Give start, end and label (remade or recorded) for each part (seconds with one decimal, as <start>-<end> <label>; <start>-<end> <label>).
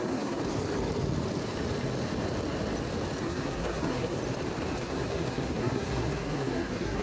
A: 0.0-0.4 remade; 0.4-3.2 recorded; 3.2-4.2 remade; 4.2-4.8 recorded; 4.8-7.0 remade